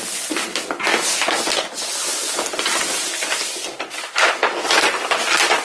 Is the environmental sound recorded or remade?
recorded